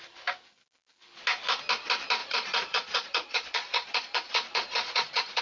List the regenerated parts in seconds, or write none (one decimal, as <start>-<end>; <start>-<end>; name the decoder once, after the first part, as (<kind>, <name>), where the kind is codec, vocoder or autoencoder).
2.2-5.4 (vocoder, Vocos)

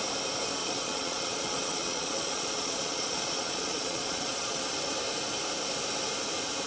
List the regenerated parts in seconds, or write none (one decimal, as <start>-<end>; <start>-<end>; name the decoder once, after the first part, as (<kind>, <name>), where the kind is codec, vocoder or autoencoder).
0.6-4.6 (vocoder, Vocos)

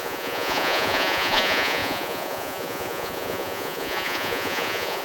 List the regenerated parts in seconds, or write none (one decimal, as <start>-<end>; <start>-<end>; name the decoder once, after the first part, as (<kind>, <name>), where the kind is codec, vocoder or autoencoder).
0.0-5.0 (vocoder, Vocos)

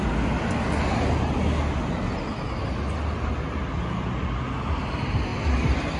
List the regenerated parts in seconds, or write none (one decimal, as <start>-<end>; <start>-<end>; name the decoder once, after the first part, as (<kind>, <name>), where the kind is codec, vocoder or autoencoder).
none

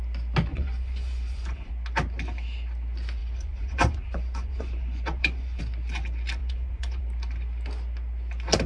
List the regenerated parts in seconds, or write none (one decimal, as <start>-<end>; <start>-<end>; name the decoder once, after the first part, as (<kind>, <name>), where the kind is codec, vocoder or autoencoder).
0.5-1.7 (vocoder, Vocos); 3.2-5.6; 6.4-7.0

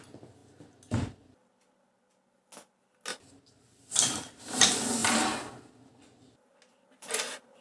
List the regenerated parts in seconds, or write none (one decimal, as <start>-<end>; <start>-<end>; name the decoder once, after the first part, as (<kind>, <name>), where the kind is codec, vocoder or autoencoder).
none